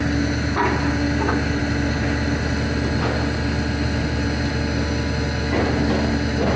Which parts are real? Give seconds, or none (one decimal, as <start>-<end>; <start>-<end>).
0.0-6.6